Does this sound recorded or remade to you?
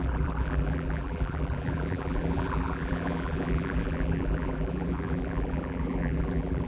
remade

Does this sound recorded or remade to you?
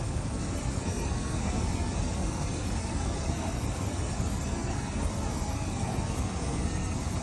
remade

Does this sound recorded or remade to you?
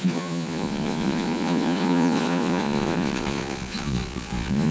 remade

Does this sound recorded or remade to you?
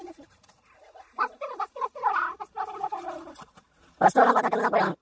recorded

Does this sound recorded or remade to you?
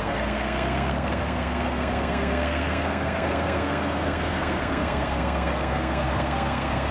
remade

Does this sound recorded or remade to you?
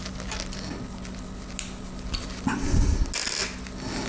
recorded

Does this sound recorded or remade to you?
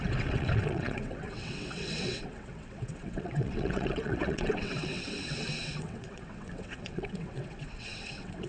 remade